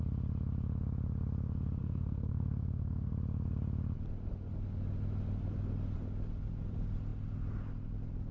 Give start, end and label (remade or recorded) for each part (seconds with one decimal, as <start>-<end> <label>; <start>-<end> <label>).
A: 0.0-1.8 recorded; 1.8-3.1 remade; 3.1-8.3 recorded